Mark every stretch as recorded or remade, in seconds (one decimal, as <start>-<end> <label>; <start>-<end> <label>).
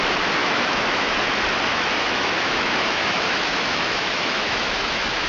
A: 0.0-0.4 recorded; 0.4-1.2 remade; 1.2-1.7 recorded; 1.7-5.3 remade